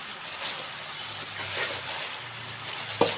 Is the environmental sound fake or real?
real